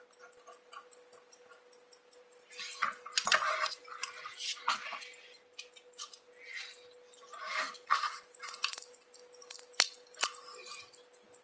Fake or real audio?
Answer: real